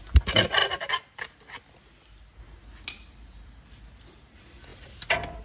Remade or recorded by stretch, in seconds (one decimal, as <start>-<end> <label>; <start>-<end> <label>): 0.0-5.4 recorded